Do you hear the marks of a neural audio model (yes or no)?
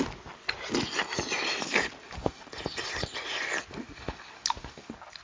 no